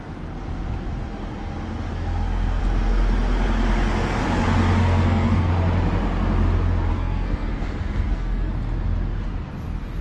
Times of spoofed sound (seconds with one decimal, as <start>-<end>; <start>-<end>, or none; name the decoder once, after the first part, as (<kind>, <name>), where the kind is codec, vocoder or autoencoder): 1.9-2.6 (codec, SNAC); 4.8-5.5; 6.9-8.5